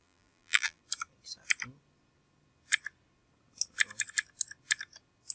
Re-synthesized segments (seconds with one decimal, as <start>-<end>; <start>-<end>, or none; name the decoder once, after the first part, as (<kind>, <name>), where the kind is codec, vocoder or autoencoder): 0.0-0.8 (vocoder, BigVGAN v2)